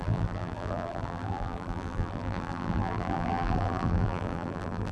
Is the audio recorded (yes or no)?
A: no